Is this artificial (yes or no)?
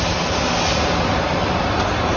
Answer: no